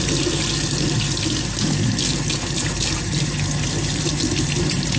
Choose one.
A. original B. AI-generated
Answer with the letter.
A